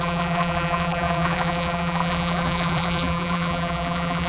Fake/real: fake